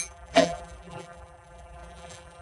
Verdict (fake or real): fake